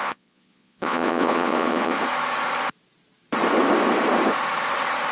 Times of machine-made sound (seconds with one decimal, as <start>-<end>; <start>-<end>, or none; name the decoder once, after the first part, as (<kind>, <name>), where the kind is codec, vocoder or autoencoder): 0.0-2.0 (vocoder, Vocos)